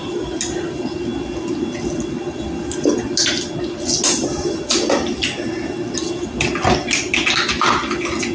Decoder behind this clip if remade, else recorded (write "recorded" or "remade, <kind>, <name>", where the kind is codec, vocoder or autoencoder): recorded